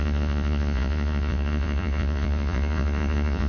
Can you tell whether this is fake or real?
fake